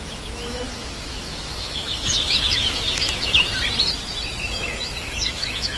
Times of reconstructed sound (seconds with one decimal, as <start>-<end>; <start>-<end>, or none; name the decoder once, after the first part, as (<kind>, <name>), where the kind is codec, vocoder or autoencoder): 0.0-3.5 (autoencoder, DAC-VAE); 4.4-5.8